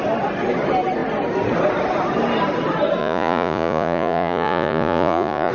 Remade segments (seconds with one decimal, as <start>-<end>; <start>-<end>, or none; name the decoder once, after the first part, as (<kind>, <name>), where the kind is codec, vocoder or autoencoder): 3.0-5.5 (vocoder, Vocos)